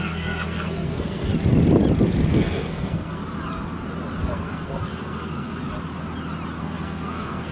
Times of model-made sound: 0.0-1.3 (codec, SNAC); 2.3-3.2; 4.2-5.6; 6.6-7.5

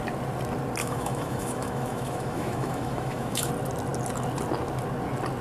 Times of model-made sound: 0.8-3.5 (autoencoder, DAC-VAE)